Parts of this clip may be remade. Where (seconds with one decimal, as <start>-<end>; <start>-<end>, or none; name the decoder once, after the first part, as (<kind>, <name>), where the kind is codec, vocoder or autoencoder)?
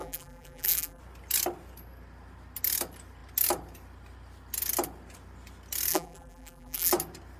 0.0-1.0 (vocoder, BigVGAN v2); 5.9-6.9